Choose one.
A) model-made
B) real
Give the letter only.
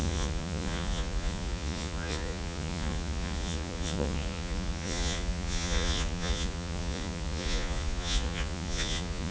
A